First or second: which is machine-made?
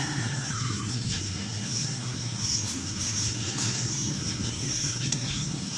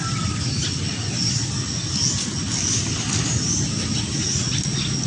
first